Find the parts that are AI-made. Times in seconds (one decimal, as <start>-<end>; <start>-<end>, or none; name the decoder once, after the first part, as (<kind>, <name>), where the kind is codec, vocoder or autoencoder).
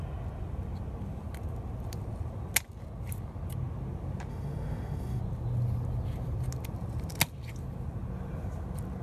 4.3-5.2 (autoencoder, DAC-VAE)